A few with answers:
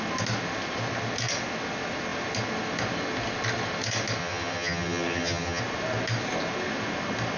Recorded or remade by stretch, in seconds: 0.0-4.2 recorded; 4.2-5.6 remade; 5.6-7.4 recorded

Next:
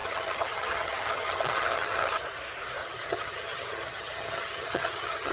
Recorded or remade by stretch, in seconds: 0.0-2.2 remade; 2.2-2.8 recorded; 2.8-5.3 remade

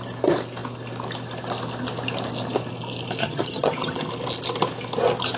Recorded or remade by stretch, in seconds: 0.0-3.2 recorded; 3.2-4.1 remade; 4.1-5.4 recorded